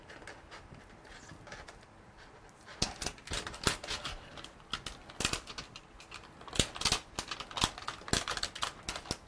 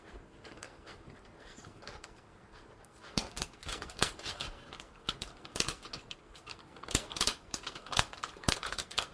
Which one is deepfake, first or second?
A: second